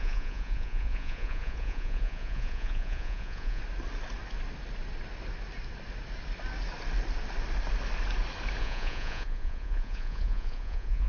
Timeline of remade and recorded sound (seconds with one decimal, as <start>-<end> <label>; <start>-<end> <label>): 0.0-3.6 remade; 3.6-8.6 recorded; 8.6-11.1 remade